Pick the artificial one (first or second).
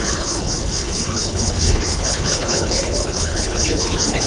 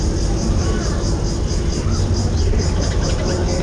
first